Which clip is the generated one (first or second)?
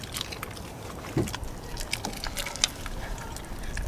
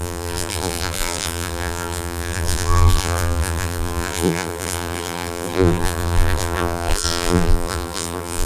second